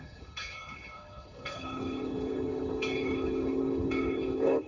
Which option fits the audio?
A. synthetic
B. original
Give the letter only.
A